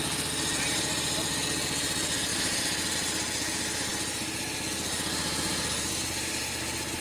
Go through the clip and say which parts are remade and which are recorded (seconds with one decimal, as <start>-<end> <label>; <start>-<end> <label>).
0.0-2.3 recorded; 2.3-2.9 remade; 2.9-7.0 recorded